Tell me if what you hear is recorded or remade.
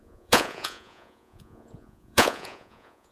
remade